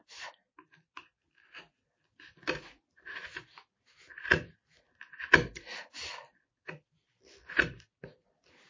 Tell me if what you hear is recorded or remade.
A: remade